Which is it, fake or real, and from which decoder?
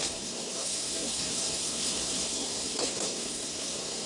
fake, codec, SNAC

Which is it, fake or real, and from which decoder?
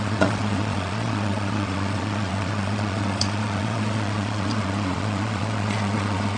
fake, vocoder, Vocos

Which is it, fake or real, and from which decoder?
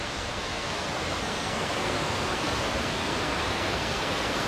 fake, codec, SNAC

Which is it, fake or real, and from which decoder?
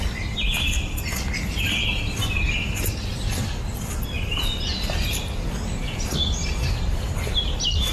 real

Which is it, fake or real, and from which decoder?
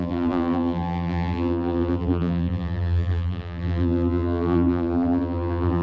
fake, vocoder, BigVGAN v2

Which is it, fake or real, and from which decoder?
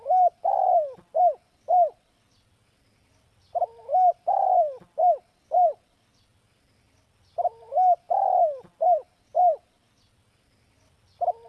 real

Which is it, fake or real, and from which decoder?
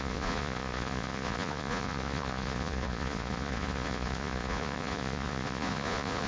fake, vocoder, Vocos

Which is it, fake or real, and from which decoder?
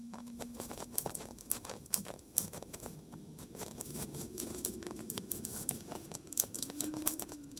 fake, autoencoder, DAC-VAE